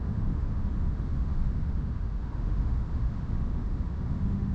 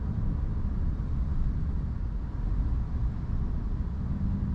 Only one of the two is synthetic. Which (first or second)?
first